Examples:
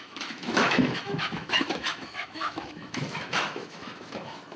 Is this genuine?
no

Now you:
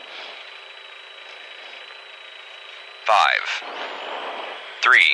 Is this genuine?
yes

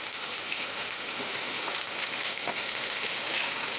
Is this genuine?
no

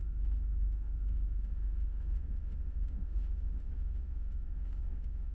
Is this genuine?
no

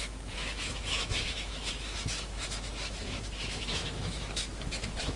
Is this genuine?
no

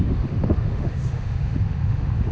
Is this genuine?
no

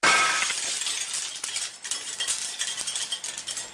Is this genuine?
yes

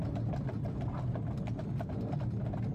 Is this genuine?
yes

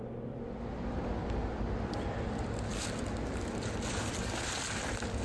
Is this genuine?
yes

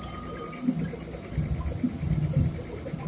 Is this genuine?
yes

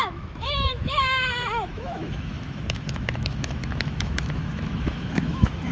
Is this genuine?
no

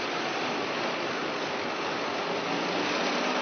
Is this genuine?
yes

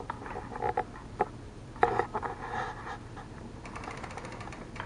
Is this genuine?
yes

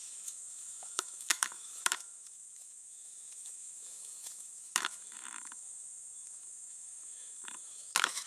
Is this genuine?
no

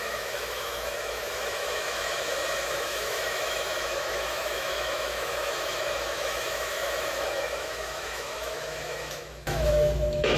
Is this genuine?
no